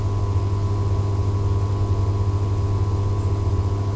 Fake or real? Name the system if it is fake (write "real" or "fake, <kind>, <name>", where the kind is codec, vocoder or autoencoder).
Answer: real